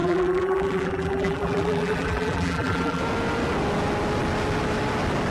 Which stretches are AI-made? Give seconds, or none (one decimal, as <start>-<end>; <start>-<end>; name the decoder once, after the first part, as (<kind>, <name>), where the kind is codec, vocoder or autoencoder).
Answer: 0.0-3.0 (vocoder, BigVGAN v2)

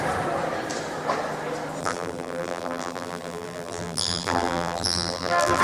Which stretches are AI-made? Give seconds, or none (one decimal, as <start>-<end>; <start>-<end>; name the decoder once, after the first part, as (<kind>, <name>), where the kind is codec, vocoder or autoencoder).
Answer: 1.8-5.6 (vocoder, BigVGAN v2)

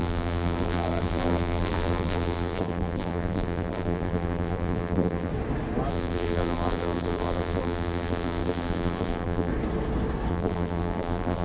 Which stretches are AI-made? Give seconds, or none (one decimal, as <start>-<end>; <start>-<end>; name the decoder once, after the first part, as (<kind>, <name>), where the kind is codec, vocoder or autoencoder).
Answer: 0.0-5.3 (vocoder, BigVGAN v2); 5.9-9.5; 10.3-11.4